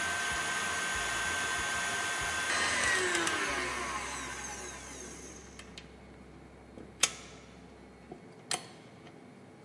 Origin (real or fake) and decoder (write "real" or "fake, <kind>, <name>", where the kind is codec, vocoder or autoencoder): real